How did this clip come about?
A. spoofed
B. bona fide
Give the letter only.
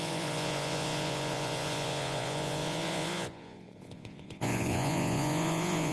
A